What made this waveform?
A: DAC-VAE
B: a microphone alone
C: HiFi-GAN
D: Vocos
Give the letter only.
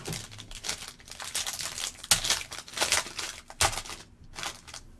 B